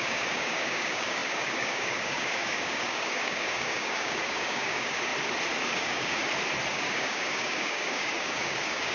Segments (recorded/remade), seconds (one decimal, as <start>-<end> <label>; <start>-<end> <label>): 0.0-5.1 remade; 5.1-5.6 recorded; 5.6-6.2 remade; 6.2-6.7 recorded; 6.7-8.9 remade